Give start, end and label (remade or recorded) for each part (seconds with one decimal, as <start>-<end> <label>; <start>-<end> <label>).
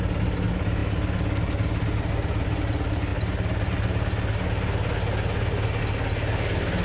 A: 0.0-6.8 recorded